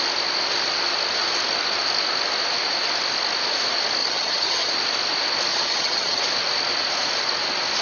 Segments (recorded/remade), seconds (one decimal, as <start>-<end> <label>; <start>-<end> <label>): 0.0-4.0 recorded; 4.0-4.7 remade; 4.7-5.5 recorded; 5.5-6.2 remade; 6.2-7.8 recorded